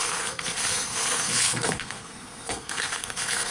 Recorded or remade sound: remade